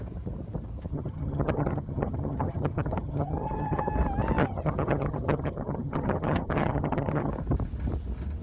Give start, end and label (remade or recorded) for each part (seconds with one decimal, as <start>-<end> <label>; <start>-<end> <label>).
0.0-0.9 recorded; 0.9-3.9 remade; 3.9-4.4 recorded; 4.4-7.3 remade; 7.3-8.4 recorded